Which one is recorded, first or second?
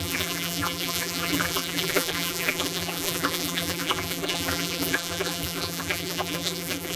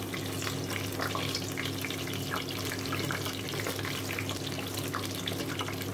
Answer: second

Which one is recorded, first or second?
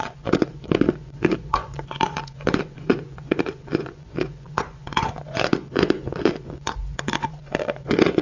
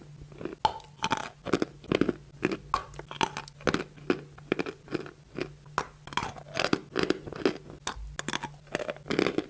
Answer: second